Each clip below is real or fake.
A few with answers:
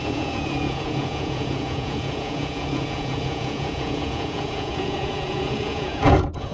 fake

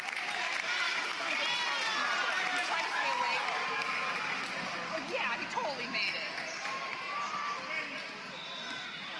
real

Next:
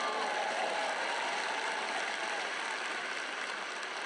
real